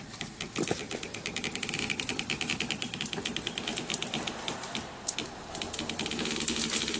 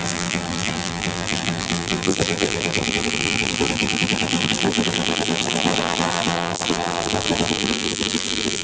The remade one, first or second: second